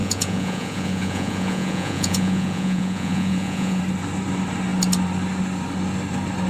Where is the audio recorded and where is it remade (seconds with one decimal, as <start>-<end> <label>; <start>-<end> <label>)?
0.0-3.8 remade; 3.8-6.5 recorded